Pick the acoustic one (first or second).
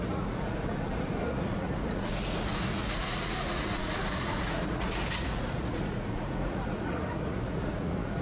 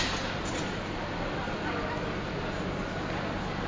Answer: second